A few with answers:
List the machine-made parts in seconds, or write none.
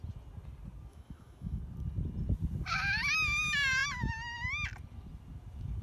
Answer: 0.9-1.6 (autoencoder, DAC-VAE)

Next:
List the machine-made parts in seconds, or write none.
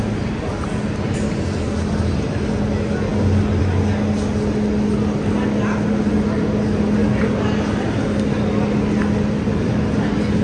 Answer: none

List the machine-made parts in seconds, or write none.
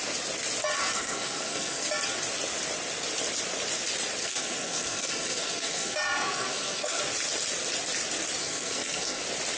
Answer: 0.8-1.9 (codec, SNAC); 4.2-7.0; 8.4-9.2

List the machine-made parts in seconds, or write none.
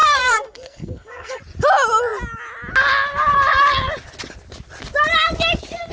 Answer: 0.0-1.4 (codec, SNAC)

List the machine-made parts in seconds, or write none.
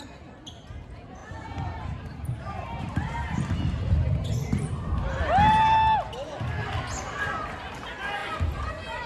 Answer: 1.2-5.1 (vocoder, BigVGAN v2)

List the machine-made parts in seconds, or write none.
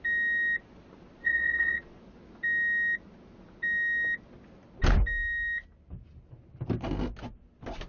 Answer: 1.2-2.0 (vocoder, Vocos)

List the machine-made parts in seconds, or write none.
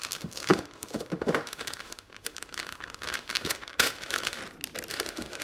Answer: 0.0-4.4 (autoencoder, DAC-VAE); 4.9-5.4